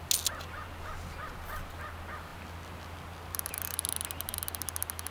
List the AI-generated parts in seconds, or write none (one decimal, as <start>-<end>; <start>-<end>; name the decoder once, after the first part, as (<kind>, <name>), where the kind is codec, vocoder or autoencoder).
none